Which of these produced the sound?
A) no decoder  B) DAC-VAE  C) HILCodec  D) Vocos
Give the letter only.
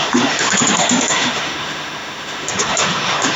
B